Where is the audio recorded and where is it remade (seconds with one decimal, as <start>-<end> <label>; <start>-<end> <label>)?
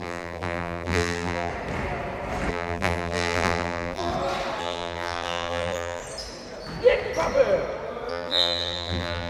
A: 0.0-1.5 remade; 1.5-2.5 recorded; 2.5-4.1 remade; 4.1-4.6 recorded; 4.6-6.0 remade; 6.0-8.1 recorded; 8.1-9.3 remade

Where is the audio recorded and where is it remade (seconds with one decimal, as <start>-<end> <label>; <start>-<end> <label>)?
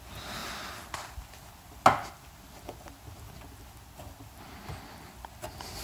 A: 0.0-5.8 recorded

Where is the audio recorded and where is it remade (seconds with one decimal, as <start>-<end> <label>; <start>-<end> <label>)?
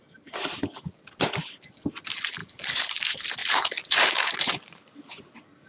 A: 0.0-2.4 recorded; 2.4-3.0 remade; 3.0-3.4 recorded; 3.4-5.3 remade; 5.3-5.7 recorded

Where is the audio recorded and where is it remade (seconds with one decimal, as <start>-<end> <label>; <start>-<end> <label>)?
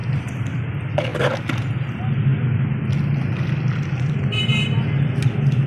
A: 0.0-0.7 remade; 0.7-5.7 recorded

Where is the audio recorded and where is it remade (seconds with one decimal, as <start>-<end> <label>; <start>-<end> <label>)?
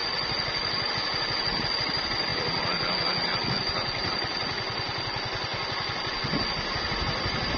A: 0.0-2.3 remade; 2.3-3.5 recorded; 3.5-5.5 remade; 5.5-7.6 recorded